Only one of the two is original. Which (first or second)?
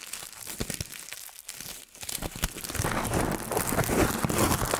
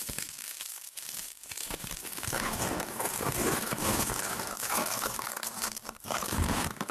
first